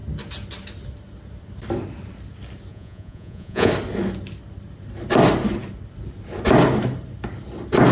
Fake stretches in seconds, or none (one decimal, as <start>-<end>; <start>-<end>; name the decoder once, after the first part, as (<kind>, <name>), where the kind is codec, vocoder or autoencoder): 2.7-3.7 (vocoder, Vocos)